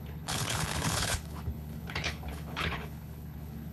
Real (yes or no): no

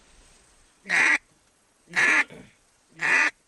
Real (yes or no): no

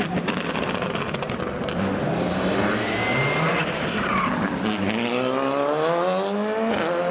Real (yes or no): yes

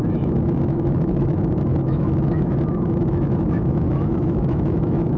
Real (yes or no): no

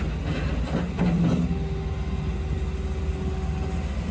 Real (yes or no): yes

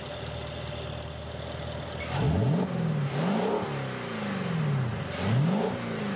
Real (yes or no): yes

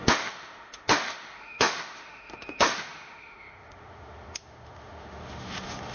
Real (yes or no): no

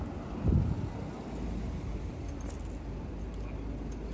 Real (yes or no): yes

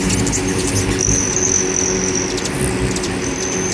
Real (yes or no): yes